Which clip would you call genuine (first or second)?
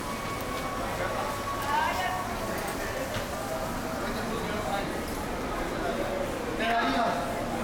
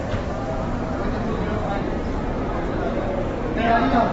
first